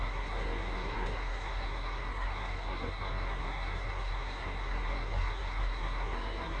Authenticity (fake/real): fake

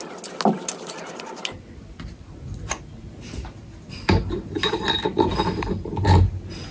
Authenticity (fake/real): real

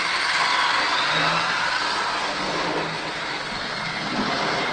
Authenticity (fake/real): real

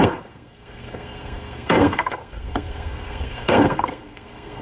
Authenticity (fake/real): fake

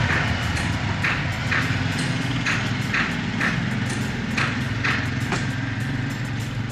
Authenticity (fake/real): real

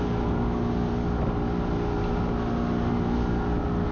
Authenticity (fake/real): real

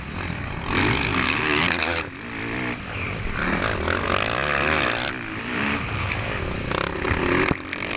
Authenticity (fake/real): real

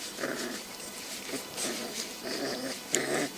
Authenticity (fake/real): fake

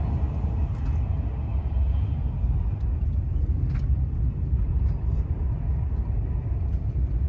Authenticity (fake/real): real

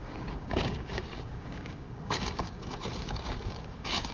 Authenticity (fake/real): fake